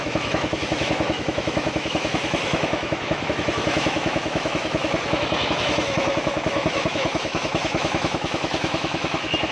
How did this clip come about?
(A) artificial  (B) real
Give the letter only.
A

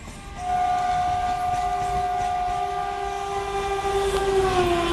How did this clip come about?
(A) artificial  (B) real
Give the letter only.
B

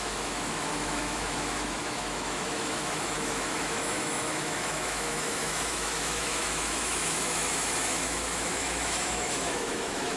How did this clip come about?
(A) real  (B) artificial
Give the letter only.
B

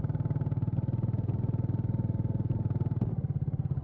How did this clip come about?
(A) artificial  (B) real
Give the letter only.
B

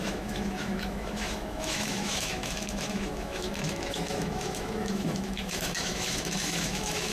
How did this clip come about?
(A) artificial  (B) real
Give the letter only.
A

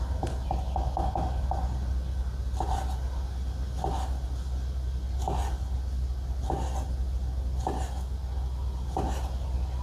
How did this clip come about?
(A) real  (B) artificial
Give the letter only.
A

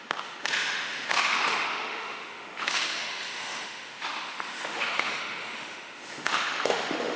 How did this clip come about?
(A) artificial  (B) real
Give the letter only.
A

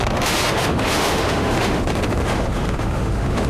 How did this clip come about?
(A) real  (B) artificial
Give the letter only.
B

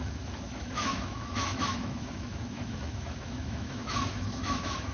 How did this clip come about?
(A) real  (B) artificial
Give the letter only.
B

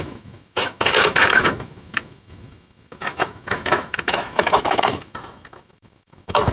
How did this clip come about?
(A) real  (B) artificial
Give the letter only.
B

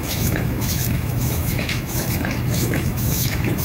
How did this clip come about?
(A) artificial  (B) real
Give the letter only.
A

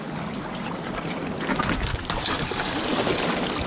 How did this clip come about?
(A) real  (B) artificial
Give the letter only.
A